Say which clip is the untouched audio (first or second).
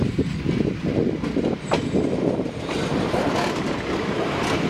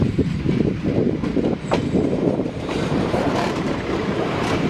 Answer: first